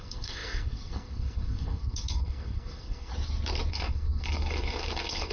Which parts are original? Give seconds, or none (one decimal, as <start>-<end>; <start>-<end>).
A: 3.1-3.7